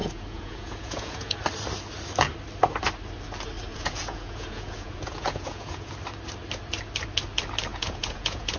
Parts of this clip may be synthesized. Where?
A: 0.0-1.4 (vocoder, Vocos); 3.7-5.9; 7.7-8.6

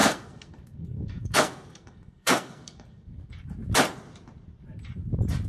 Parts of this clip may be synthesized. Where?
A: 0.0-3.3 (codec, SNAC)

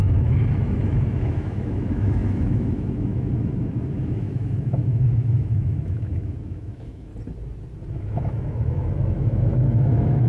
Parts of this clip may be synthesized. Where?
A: 0.0-7.1 (autoencoder, DAC-VAE); 7.9-10.3

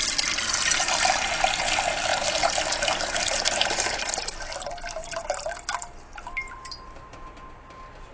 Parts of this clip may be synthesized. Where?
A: none

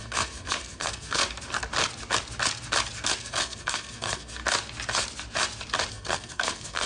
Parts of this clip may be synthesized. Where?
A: 0.0-1.2 (codec, SNAC); 3.2-4.4; 5.9-6.9

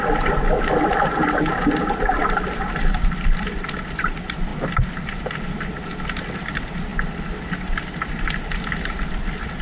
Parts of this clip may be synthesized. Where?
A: none